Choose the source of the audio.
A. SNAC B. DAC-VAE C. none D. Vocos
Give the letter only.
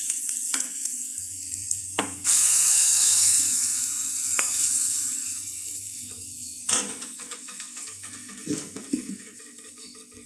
A